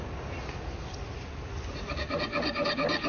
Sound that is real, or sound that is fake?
real